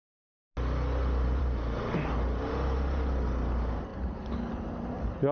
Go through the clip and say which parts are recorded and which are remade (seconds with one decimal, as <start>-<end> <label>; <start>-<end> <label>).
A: 0.0-3.9 recorded; 3.9-5.3 remade